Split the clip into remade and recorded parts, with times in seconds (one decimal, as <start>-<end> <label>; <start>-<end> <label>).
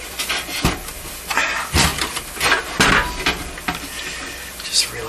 0.0-1.9 remade; 1.9-5.1 recorded